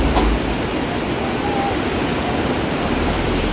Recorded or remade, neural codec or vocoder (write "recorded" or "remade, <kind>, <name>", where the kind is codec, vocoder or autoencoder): remade, vocoder, BigVGAN v2